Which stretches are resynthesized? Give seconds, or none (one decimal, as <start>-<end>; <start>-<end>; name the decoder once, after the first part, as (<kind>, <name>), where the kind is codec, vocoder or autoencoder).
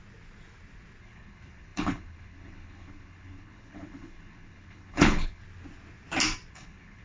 1.0-5.4 (codec, HILCodec); 6.5-7.0